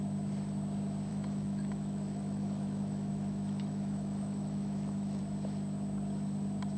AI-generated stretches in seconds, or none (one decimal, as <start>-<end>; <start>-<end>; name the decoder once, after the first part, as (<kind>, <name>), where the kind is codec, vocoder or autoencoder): 1.1-5.2 (autoencoder, DAC-VAE)